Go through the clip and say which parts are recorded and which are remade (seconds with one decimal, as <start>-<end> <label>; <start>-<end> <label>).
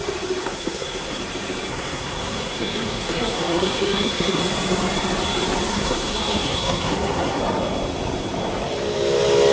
0.0-0.4 recorded; 0.4-1.2 remade; 1.2-1.7 recorded; 1.7-4.4 remade; 4.4-5.7 recorded; 5.7-7.4 remade; 7.4-9.5 recorded